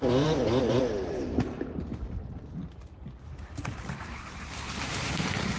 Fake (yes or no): yes